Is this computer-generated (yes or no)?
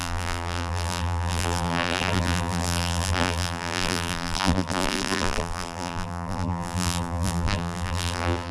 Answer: yes